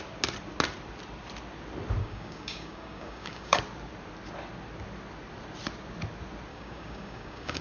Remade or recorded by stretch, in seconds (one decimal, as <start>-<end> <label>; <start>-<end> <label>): 0.0-2.0 recorded; 2.0-3.6 remade; 3.6-6.5 recorded; 6.5-7.6 remade